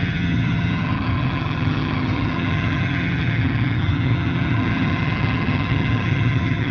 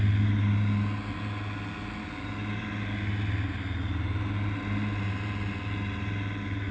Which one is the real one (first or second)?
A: second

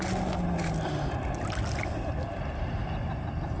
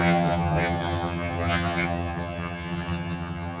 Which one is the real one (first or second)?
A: first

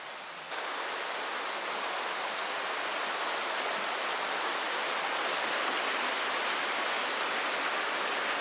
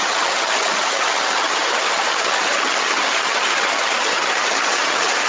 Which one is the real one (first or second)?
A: first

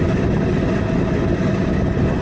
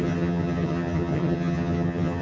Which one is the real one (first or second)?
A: first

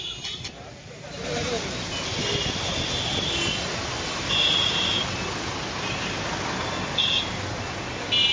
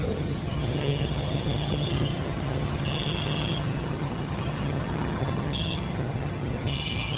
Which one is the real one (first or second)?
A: first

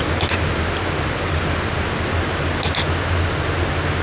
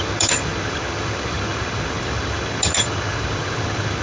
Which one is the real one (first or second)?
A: first